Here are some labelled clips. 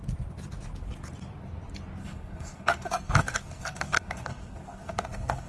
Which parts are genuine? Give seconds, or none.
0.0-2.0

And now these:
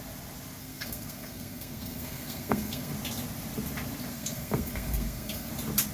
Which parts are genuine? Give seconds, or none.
0.0-0.6; 2.9-4.1; 5.5-5.9

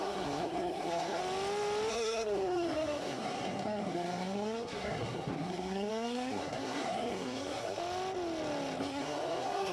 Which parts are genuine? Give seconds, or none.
1.2-1.9; 7.8-8.8

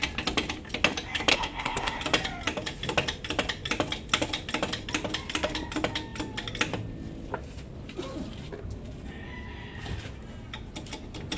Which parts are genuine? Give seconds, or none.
0.0-1.3; 2.0-11.4